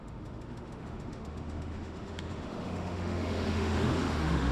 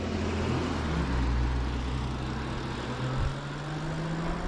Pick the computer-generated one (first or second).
first